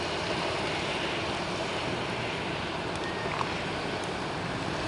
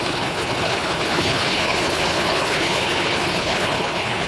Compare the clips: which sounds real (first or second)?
first